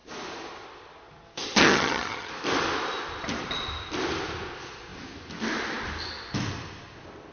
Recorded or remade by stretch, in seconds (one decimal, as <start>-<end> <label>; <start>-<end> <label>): 0.0-1.6 recorded; 1.6-2.3 remade; 2.3-7.3 recorded